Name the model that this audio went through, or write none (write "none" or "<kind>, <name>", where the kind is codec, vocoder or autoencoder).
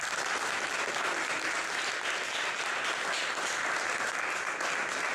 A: none